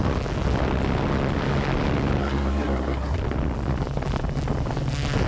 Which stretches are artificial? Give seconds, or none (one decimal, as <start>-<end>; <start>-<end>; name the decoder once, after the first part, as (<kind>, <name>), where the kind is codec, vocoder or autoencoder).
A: 2.2-3.2 (codec, SNAC)